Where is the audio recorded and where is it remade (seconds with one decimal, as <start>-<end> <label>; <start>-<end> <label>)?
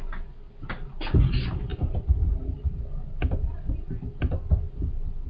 0.0-5.3 recorded